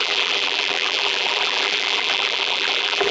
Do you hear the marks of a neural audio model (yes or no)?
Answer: yes